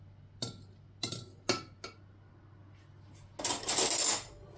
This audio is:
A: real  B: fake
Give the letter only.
A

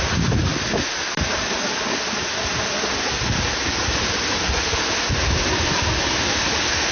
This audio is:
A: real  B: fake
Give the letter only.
B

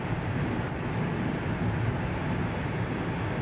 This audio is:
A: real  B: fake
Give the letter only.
A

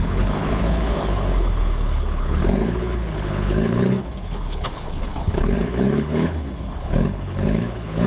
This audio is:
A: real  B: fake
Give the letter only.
B